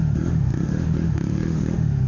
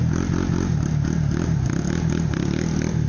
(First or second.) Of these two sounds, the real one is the second